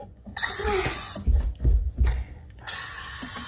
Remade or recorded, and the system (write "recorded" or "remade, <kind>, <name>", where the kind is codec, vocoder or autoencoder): remade, vocoder, Vocos